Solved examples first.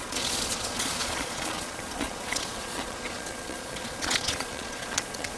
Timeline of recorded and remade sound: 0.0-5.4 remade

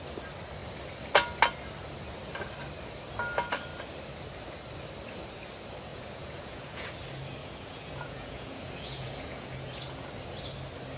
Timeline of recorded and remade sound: 0.0-5.9 recorded; 5.9-6.9 remade; 6.9-7.4 recorded; 7.4-10.1 remade; 10.1-11.0 recorded